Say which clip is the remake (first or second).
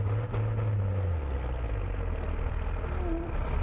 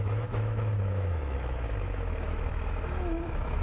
second